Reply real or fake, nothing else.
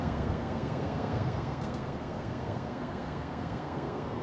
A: fake